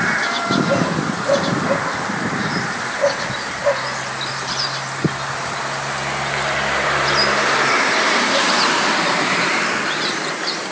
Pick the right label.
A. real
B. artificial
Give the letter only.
B